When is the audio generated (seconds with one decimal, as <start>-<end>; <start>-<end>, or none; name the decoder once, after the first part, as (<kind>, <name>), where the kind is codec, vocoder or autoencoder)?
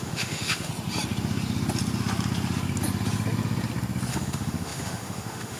0.0-0.7 (autoencoder, DAC-VAE); 4.1-5.6